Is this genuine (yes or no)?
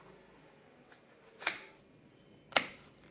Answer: yes